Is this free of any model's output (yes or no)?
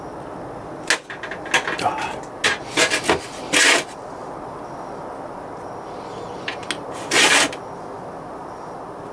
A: yes